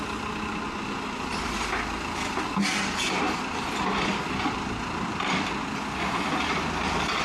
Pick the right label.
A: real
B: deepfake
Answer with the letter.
A